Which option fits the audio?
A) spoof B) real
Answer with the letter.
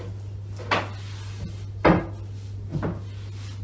B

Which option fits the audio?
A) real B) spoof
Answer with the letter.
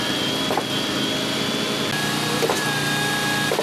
A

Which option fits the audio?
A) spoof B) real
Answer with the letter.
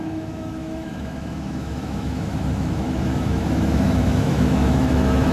A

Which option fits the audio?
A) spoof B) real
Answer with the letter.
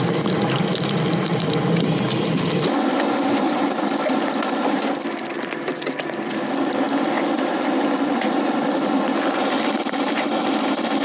A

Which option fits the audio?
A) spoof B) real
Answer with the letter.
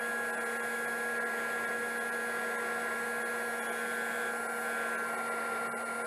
B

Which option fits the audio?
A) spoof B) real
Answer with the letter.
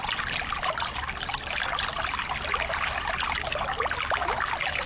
B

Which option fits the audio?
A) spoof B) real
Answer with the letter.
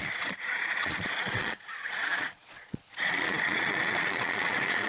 A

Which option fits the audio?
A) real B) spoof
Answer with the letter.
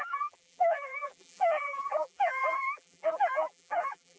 B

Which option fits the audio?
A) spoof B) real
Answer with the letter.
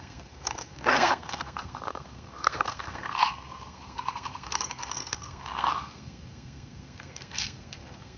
A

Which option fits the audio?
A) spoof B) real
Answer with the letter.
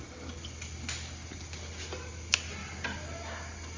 B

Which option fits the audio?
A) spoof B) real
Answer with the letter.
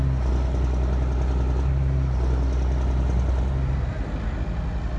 B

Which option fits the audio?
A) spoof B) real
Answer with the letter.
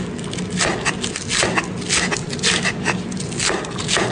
B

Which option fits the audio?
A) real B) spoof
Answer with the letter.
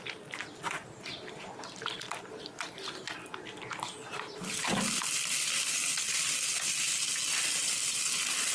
A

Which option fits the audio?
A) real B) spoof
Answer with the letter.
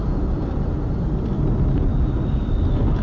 A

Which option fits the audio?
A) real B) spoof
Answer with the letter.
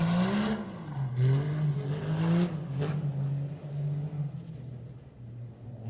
A